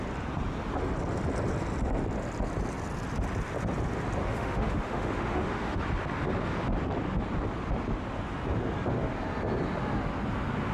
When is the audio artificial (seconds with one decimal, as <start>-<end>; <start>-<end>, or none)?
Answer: 4.2-5.8